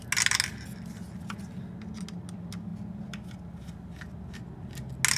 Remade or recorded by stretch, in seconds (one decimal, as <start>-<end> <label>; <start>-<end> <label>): 0.0-5.2 recorded